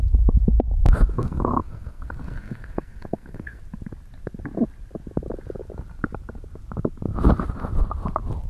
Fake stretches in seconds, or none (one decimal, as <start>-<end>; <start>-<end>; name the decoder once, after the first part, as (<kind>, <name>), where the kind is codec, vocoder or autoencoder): 1.1-3.6 (codec, SNAC)